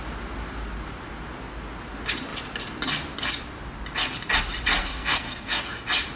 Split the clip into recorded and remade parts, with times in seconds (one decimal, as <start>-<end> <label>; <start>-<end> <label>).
0.0-4.8 recorded; 4.8-5.6 remade; 5.6-6.2 recorded